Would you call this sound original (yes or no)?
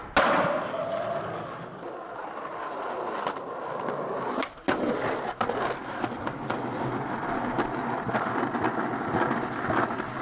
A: yes